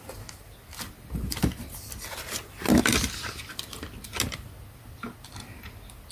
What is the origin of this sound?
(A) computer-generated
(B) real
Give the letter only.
B